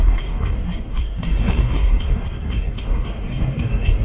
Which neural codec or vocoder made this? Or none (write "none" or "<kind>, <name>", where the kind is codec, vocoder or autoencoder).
codec, SNAC